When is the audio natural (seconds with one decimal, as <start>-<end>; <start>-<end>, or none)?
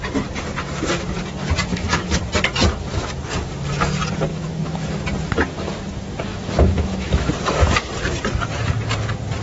0.0-1.7; 2.2-4.3; 5.0-6.3; 7.3-9.4